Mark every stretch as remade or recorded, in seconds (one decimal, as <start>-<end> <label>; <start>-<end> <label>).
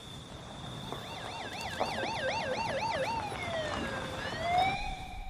0.0-1.2 remade; 1.2-1.8 recorded; 1.8-5.3 remade